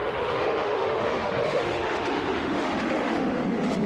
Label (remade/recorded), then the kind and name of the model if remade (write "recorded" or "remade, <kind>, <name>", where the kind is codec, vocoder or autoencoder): remade, autoencoder, DAC-VAE